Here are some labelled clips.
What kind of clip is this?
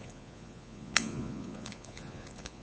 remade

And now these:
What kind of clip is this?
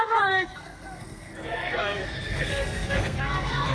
remade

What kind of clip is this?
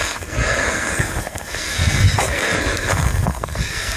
remade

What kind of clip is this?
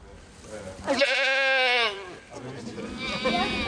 recorded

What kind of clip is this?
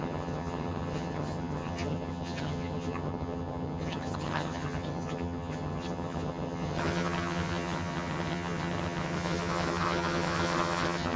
remade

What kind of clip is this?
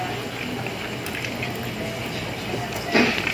recorded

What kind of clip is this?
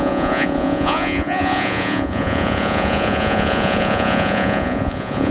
remade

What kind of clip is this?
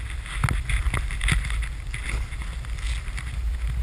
recorded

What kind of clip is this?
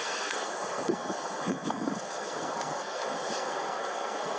remade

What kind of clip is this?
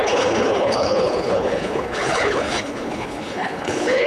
remade